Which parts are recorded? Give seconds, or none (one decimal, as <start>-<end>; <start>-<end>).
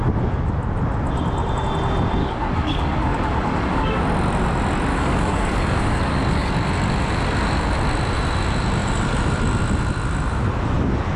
0.0-2.2; 4.0-4.9; 6.5-11.2